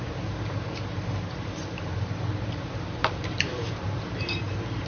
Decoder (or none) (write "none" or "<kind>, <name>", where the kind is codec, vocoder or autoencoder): vocoder, BigVGAN v2